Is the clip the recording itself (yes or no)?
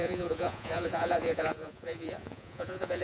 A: no